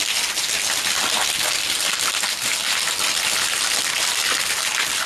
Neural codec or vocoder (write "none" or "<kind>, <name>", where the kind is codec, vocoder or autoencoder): none